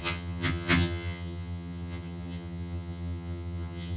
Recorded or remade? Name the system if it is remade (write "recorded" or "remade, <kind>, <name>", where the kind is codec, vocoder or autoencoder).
remade, vocoder, HiFi-GAN